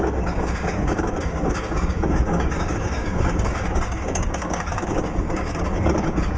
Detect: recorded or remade remade